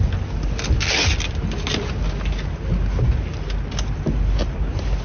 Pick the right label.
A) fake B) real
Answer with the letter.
B